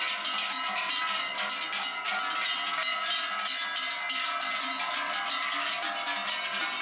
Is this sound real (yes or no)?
yes